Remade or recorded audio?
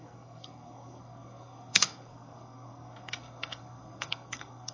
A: remade